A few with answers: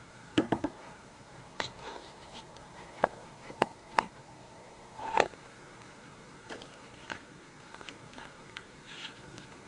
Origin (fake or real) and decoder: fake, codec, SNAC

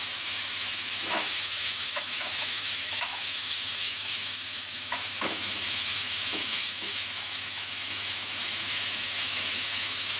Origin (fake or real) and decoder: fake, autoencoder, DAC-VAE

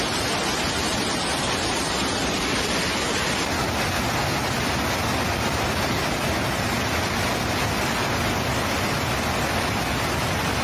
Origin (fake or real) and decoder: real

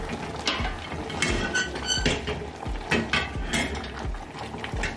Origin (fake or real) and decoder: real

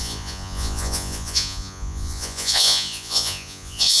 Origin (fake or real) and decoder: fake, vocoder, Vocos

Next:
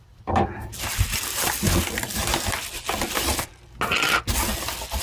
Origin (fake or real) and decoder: real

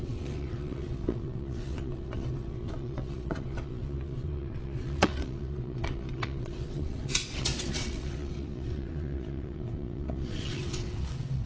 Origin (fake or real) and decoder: fake, vocoder, WaveNeXt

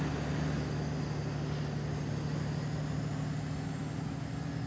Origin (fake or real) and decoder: real